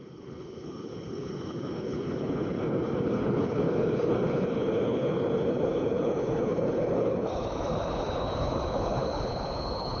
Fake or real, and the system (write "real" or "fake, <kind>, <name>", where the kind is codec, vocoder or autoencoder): fake, codec, HILCodec